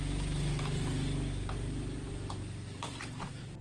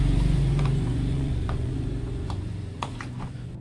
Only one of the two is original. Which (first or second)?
first